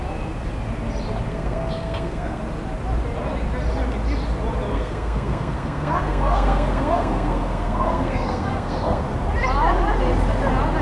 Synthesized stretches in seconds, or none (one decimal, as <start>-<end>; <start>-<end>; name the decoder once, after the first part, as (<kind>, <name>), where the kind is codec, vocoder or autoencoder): 1.3-2.4 (codec, SNAC); 4.7-9.0